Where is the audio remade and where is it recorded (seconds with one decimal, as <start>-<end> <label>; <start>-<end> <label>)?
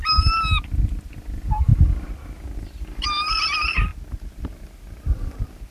0.0-5.7 recorded